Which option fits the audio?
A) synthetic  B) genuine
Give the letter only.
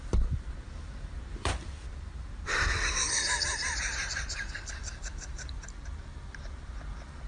A